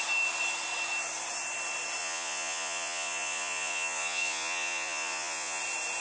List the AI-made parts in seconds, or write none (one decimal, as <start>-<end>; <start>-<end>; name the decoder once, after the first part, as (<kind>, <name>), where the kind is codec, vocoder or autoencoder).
2.0-5.6 (vocoder, Vocos)